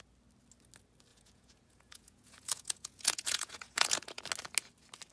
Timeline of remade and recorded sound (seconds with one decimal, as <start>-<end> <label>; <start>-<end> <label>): 0.0-1.1 recorded; 1.1-4.2 remade; 4.2-5.1 recorded